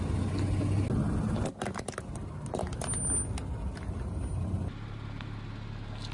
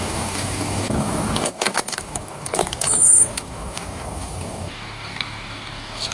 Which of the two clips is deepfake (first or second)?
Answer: second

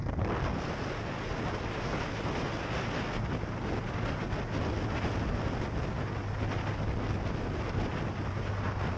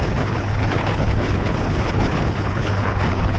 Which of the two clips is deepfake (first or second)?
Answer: second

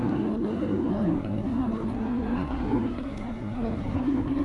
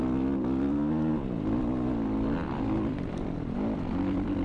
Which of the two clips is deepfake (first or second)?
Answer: first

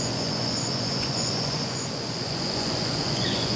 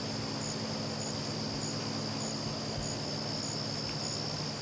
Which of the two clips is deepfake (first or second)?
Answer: first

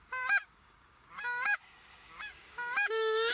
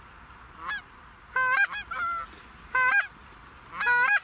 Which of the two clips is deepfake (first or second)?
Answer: first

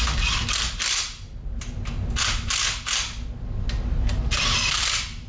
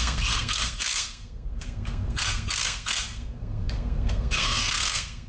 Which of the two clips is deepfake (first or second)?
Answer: second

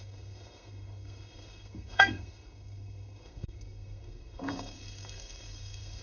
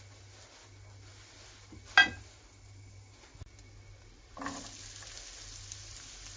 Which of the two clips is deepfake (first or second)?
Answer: first